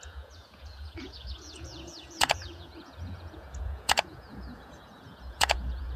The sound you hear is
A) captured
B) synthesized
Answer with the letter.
B